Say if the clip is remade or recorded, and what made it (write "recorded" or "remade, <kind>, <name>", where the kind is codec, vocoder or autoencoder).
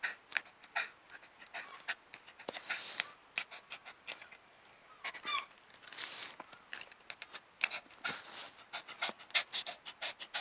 recorded